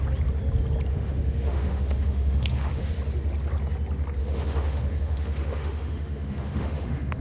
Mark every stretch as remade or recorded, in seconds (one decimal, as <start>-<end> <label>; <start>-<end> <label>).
0.0-0.9 recorded; 0.9-2.9 remade; 2.9-4.2 recorded; 4.2-7.2 remade